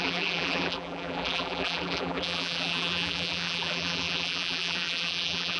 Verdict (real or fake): fake